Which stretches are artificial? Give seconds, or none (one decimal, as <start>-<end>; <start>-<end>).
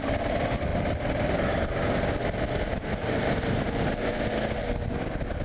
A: 3.0-4.3